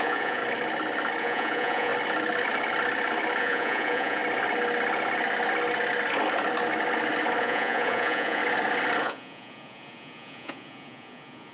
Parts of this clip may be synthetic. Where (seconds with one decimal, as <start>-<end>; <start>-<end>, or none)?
0.0-0.4; 1.2-1.9; 3.4-4.2; 7.4-8.4; 9.0-11.5